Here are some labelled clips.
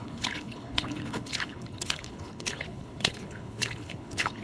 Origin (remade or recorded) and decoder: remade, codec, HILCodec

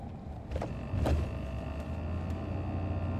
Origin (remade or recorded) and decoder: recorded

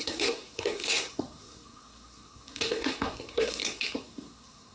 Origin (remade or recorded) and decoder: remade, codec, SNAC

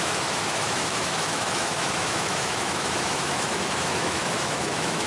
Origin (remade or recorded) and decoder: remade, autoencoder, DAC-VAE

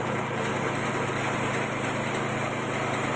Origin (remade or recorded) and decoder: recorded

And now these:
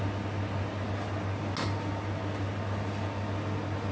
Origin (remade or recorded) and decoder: recorded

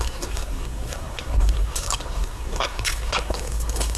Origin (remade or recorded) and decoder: remade, codec, SNAC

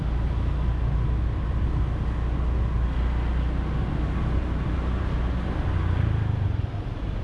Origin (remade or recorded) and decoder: recorded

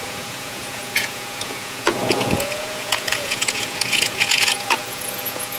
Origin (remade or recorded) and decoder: remade, vocoder, Vocos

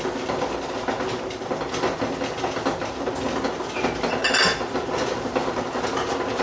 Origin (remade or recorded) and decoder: recorded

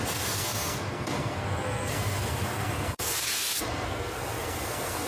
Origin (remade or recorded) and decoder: remade, codec, SNAC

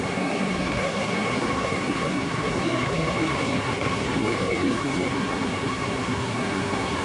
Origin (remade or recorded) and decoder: remade, codec, SNAC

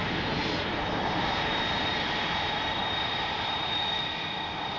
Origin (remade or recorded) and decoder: remade, vocoder, BigVGAN v2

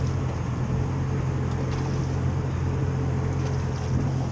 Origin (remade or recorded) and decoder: recorded